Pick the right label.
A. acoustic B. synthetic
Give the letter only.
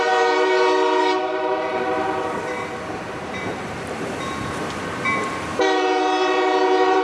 B